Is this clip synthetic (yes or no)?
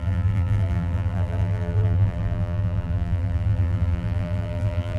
yes